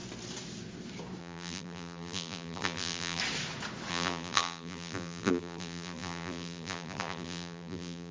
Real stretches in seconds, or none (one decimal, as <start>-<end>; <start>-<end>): 0.0-1.2; 3.2-3.9